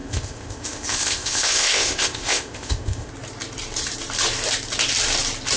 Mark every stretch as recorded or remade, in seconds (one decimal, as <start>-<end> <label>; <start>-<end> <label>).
0.0-3.1 remade; 3.1-5.6 recorded